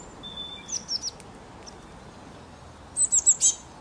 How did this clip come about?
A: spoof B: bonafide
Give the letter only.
B